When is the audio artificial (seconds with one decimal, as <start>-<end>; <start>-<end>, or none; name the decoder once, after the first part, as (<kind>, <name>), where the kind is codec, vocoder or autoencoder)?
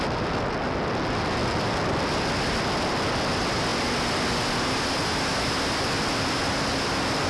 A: none